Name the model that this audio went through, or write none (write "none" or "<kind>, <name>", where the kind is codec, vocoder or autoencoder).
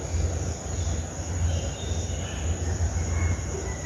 none